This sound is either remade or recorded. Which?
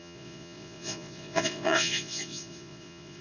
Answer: remade